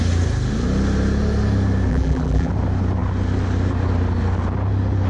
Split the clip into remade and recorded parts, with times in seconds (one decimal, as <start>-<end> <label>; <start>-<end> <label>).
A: 0.0-1.9 recorded; 1.9-2.5 remade; 2.5-5.1 recorded